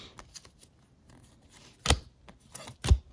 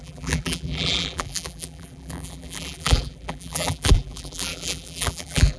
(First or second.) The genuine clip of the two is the first